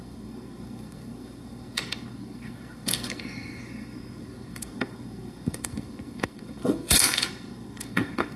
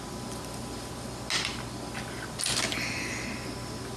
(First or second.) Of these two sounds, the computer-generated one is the first